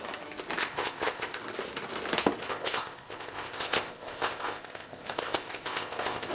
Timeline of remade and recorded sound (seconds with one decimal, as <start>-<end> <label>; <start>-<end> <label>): 0.0-0.6 recorded; 0.6-1.4 remade; 1.4-2.4 recorded; 2.4-6.3 remade